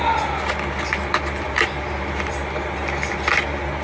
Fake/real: real